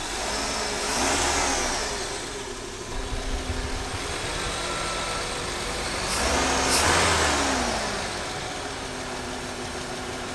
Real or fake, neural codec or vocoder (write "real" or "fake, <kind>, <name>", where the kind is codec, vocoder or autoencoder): real